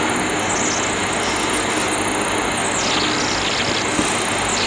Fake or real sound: real